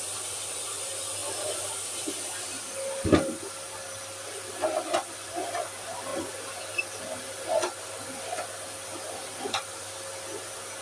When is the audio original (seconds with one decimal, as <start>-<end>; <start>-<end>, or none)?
0.0-10.8